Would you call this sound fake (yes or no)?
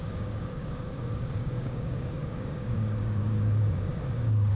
yes